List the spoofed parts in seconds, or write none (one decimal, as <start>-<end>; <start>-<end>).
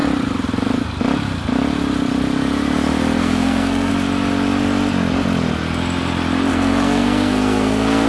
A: 3.2-3.9; 6.5-8.1